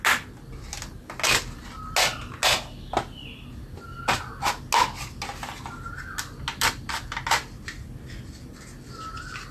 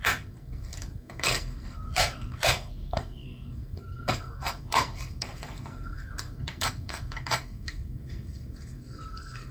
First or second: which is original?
first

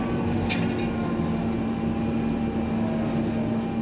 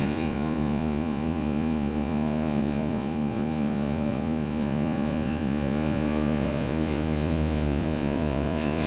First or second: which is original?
first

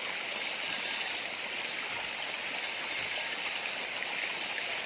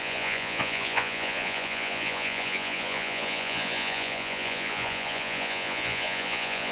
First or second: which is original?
first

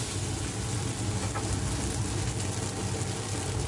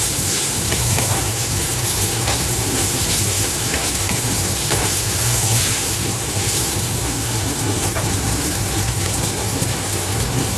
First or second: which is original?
first